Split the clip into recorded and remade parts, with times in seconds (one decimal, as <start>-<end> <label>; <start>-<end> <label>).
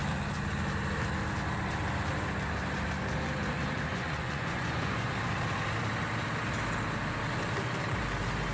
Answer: 0.0-3.9 recorded; 3.9-5.1 remade; 5.1-8.5 recorded